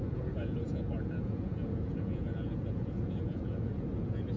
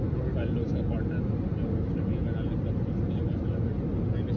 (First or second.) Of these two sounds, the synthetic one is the first